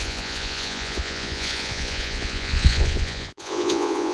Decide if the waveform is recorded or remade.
remade